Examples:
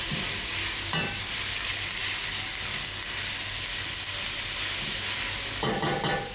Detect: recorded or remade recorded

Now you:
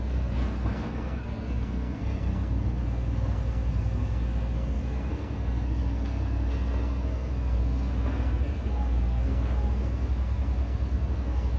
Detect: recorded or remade remade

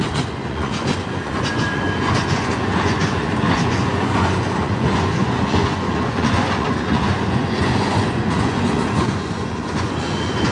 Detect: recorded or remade remade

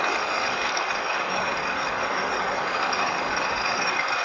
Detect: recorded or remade remade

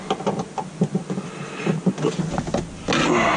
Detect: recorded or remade recorded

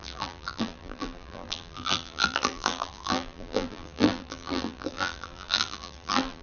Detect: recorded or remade remade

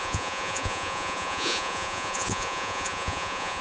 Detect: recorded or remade remade